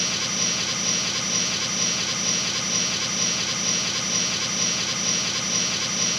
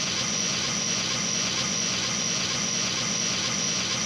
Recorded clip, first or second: first